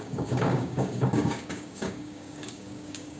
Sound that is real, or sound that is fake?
fake